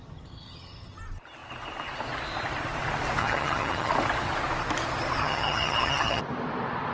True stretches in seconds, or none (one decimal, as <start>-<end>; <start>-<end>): 1.0-3.2; 3.9-5.2; 6.2-6.9